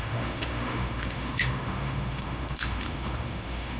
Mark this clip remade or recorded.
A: remade